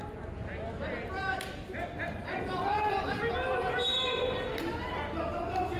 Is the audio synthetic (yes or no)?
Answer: no